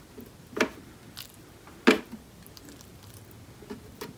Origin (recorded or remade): recorded